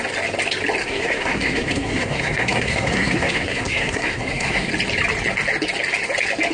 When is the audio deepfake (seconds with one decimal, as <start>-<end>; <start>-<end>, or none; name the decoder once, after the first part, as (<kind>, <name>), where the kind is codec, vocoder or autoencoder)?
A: 0.8-4.7 (codec, SNAC)